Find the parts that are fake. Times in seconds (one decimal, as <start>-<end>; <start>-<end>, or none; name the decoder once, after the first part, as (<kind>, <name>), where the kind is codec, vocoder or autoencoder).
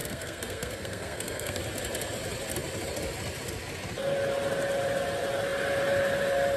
0.0-1.6 (codec, SNAC)